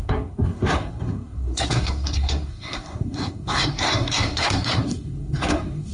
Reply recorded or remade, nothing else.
remade